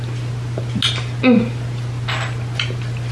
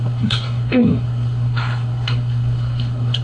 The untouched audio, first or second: first